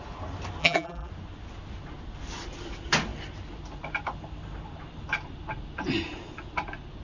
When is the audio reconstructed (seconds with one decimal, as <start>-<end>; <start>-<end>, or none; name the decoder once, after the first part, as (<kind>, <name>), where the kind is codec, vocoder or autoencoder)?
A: 0.6-1.1 (vocoder, BigVGAN v2)